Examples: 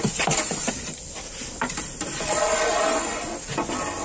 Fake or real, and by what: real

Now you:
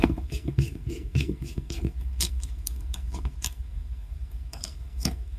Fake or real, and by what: fake, codec, SNAC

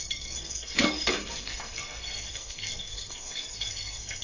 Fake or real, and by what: fake, codec, SNAC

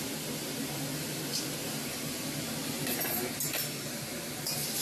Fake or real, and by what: real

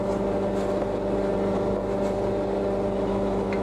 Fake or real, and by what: real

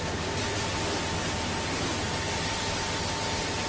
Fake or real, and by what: real